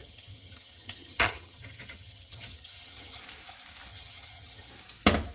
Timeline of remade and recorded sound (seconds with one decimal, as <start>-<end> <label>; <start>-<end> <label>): 0.0-3.2 remade; 3.2-3.9 recorded; 3.9-4.7 remade; 4.7-5.3 recorded